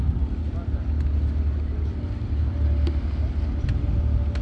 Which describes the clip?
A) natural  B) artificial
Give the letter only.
A